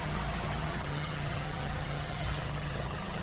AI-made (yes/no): yes